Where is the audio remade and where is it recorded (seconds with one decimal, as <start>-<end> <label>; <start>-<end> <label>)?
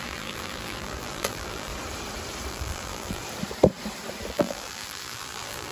0.0-1.7 remade; 1.7-2.5 recorded; 2.5-3.2 remade; 3.2-4.3 recorded; 4.3-5.7 remade